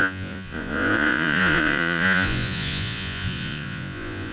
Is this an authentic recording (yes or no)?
no